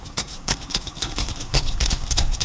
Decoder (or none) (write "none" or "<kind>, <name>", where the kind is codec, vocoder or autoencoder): codec, SNAC